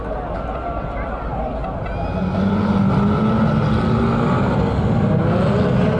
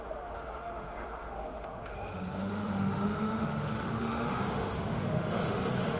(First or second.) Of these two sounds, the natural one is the first